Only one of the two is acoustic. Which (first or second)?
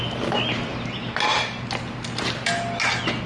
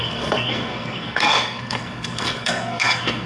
first